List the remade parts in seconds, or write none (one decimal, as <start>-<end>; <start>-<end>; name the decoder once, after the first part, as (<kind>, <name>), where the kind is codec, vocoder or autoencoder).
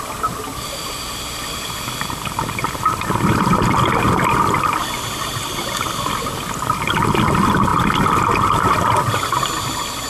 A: none